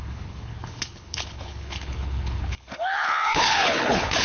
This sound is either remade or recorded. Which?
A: remade